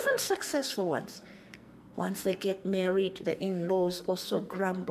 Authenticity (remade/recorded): remade